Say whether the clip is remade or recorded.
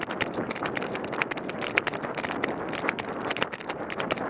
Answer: recorded